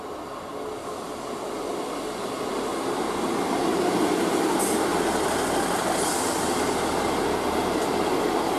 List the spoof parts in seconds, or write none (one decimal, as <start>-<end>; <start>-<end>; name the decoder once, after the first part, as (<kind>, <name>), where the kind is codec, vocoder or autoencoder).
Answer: none